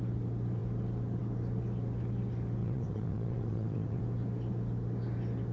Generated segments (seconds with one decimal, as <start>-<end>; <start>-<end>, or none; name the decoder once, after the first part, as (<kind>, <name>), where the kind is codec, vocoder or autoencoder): 2.6-4.0 (vocoder, WaveNeXt)